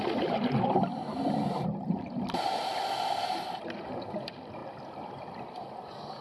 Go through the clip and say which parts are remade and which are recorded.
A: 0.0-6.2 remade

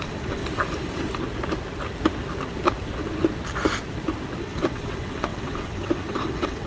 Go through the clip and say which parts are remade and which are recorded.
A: 0.0-0.4 remade; 0.4-4.4 recorded; 4.4-6.7 remade

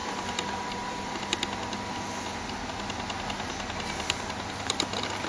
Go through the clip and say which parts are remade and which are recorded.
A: 0.0-1.2 remade; 1.2-5.3 recorded

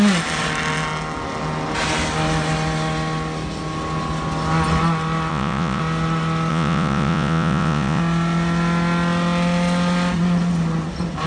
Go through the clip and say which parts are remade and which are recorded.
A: 0.0-5.3 recorded; 5.3-5.8 remade; 5.8-6.5 recorded; 6.5-8.0 remade; 8.0-11.3 recorded

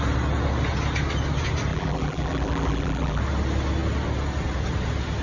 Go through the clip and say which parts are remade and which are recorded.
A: 0.0-1.7 recorded; 1.7-3.2 remade; 3.2-5.2 recorded

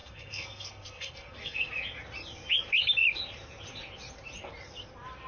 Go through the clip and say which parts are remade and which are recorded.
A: 0.0-1.7 remade; 1.7-5.3 recorded

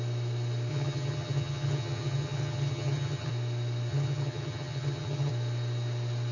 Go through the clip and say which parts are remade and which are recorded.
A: 0.0-0.7 recorded; 0.7-3.3 remade; 3.3-3.9 recorded; 3.9-5.3 remade; 5.3-6.3 recorded